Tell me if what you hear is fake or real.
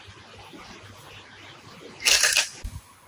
real